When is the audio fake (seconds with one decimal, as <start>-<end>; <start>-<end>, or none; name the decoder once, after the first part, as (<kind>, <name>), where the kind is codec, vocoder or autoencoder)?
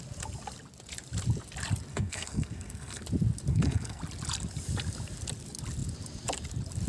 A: 1.9-3.0 (codec, SNAC); 3.5-4.0